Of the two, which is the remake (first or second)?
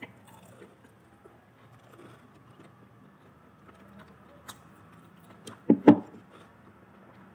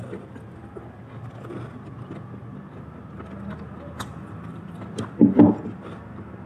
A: first